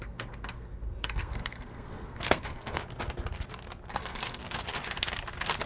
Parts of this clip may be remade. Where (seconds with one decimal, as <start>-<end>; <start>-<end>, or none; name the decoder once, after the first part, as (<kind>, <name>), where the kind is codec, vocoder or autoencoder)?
0.0-2.8 (codec, SNAC); 3.9-4.4